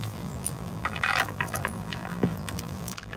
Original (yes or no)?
no